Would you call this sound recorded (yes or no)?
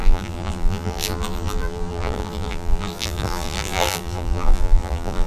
no